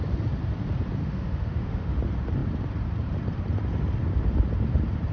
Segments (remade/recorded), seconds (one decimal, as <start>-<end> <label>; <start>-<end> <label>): 0.0-1.0 recorded; 1.0-2.0 remade; 2.0-5.1 recorded